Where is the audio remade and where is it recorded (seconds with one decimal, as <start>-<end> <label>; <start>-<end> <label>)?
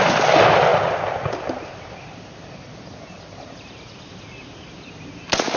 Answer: 0.0-0.7 recorded; 0.7-4.1 remade; 4.1-5.6 recorded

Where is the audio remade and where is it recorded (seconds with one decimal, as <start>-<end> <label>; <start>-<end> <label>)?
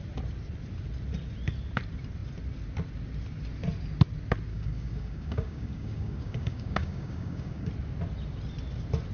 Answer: 0.0-4.5 recorded; 4.5-7.7 remade; 7.7-9.1 recorded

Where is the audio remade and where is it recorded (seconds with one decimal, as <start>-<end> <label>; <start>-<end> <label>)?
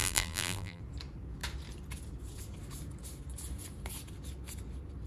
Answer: 0.0-0.8 remade; 0.8-5.1 recorded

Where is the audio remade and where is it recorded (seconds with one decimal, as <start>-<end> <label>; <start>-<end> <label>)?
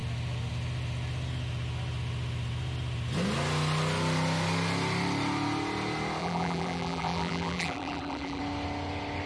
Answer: 0.0-6.2 recorded; 6.2-8.4 remade; 8.4-9.3 recorded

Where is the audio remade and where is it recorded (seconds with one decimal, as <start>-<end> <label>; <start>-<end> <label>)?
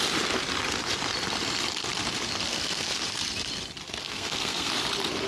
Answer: 0.0-2.5 recorded; 2.5-3.0 remade; 3.0-4.0 recorded; 4.0-4.7 remade; 4.7-5.3 recorded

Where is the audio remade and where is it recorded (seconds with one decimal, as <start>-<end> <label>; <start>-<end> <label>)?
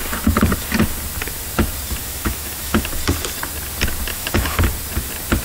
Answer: 0.0-2.0 recorded; 2.0-2.9 remade; 2.9-4.1 recorded; 4.1-4.6 remade; 4.6-5.4 recorded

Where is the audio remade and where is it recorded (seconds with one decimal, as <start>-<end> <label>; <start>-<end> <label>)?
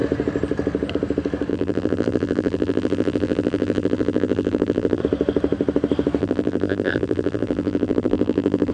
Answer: 0.0-1.5 recorded; 1.5-5.0 remade; 5.0-6.2 recorded; 6.2-8.7 remade